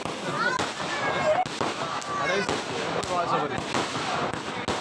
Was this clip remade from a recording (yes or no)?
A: no